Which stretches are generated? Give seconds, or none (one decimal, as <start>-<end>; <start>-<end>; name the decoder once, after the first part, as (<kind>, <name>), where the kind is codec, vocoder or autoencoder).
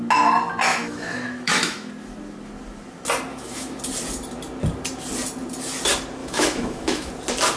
0.7-1.9 (autoencoder, DAC-VAE); 3.3-3.8; 6.2-7.1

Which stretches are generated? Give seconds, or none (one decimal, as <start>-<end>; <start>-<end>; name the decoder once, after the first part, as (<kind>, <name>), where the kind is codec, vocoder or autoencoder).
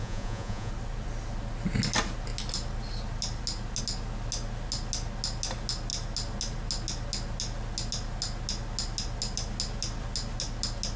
0.0-0.7 (vocoder, Vocos)